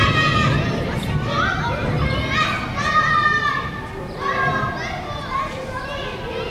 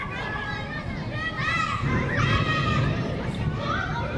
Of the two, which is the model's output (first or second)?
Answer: second